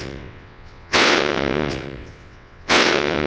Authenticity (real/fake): fake